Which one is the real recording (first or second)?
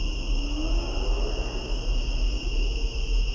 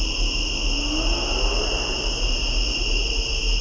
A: second